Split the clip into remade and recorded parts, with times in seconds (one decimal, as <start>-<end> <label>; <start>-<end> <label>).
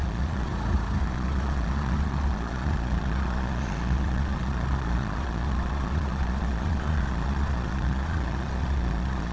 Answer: 0.0-0.5 remade; 0.5-1.0 recorded; 1.0-9.3 remade